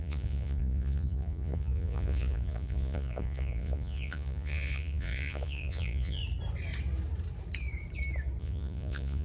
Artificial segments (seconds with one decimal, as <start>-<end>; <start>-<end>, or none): 0.0-6.2; 8.4-9.2